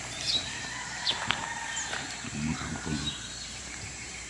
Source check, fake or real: fake